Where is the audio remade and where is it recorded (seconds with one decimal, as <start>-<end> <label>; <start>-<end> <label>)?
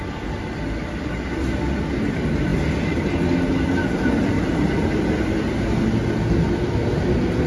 0.0-7.5 recorded